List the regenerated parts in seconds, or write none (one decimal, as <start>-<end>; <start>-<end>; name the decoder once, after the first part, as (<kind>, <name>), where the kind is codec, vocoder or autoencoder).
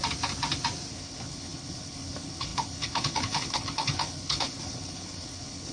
0.9-5.7 (codec, HILCodec)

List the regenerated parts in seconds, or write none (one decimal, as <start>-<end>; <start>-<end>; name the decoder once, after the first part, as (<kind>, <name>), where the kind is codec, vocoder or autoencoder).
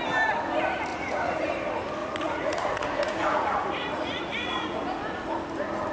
0.9-1.5 (vocoder, Vocos); 2.0-4.8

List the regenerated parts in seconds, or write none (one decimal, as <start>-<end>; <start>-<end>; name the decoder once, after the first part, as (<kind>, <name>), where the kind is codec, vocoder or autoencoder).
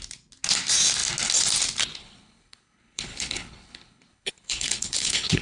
2.0-5.4 (codec, HILCodec)